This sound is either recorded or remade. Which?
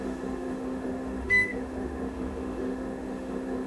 remade